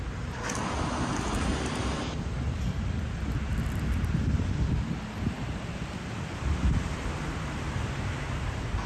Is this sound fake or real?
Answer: real